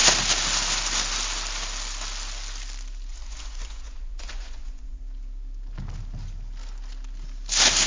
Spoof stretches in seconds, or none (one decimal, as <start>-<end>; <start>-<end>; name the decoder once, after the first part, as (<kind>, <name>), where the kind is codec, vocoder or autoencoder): 3.1-5.0 (vocoder, Vocos)